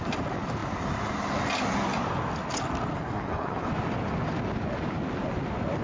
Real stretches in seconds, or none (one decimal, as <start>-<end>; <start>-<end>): 0.0-2.9; 3.7-5.8